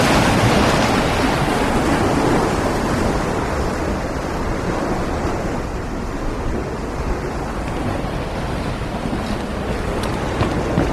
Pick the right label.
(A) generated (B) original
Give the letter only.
B